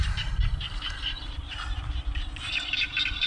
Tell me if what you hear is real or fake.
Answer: real